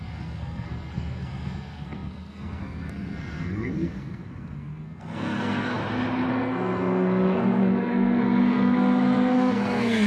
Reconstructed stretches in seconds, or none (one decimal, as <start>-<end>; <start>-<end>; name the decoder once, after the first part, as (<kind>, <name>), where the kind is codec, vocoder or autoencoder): 0.0-5.8 (codec, SNAC); 6.3-10.1